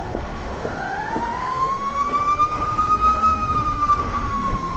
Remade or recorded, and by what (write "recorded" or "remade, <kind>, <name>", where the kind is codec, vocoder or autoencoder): remade, autoencoder, DAC-VAE